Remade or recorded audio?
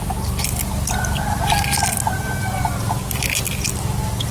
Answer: recorded